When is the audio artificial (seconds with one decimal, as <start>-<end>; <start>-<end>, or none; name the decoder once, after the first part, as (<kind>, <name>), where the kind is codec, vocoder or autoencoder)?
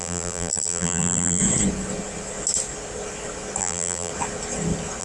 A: 0.0-1.4 (vocoder, BigVGAN v2); 3.6-4.1